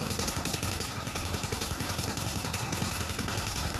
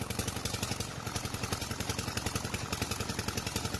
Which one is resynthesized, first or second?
first